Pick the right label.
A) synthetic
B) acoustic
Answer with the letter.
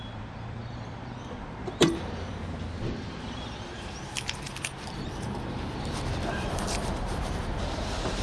A